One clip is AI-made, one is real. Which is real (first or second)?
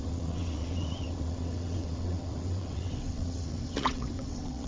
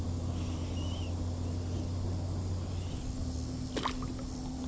second